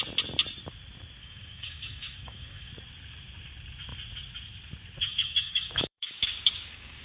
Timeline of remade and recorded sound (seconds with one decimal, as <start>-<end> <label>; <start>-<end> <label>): 0.0-1.2 recorded; 1.2-2.7 remade; 2.7-5.0 recorded; 5.0-7.0 remade